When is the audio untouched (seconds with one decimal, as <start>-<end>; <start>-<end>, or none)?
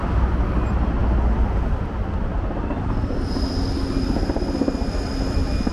0.0-5.7